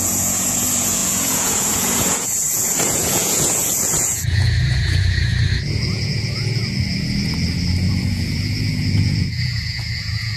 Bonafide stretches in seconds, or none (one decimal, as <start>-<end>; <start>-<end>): 5.3-5.9; 6.6-7.9